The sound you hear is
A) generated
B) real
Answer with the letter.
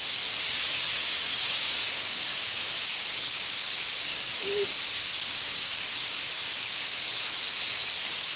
A